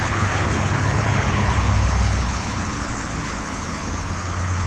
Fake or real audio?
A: fake